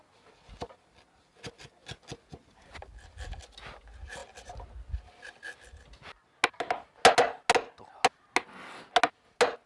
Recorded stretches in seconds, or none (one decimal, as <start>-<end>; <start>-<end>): 0.0-9.7